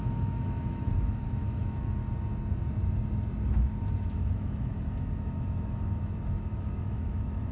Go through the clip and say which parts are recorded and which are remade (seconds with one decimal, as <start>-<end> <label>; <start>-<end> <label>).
0.0-2.0 remade; 2.0-3.9 recorded; 3.9-7.5 remade